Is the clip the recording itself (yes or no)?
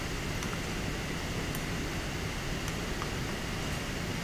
yes